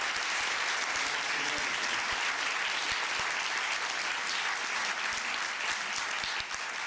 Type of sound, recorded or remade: recorded